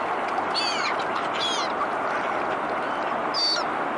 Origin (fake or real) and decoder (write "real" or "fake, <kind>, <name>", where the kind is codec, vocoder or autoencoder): real